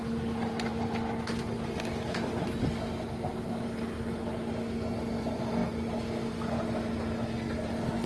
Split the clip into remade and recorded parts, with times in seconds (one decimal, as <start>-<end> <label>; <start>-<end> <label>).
0.0-8.1 recorded